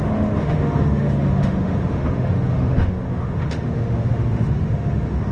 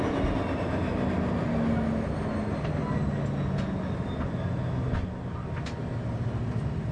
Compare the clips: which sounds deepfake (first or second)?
first